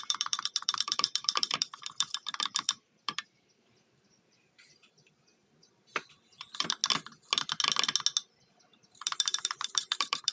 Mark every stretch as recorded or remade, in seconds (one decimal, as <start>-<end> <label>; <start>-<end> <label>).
0.0-6.8 remade; 6.8-8.5 recorded; 8.5-10.3 remade